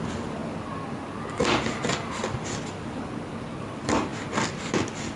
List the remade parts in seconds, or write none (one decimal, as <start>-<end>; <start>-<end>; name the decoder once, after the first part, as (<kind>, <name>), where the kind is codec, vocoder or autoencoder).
none